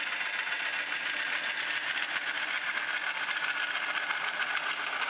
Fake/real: real